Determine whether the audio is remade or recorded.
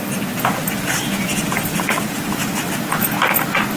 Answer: recorded